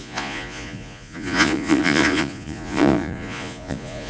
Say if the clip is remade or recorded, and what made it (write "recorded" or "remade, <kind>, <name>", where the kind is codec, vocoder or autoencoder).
remade, vocoder, Vocos